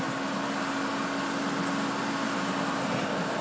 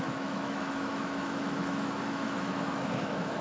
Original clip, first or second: first